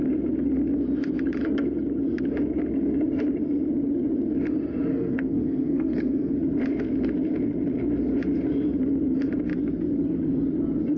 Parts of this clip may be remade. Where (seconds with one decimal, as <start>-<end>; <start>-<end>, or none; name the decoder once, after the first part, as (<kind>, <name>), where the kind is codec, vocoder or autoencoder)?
4.9-6.3 (codec, SNAC)